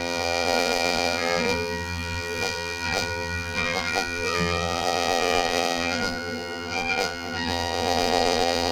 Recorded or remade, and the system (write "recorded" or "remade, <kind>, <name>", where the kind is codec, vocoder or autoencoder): remade, vocoder, BigVGAN v2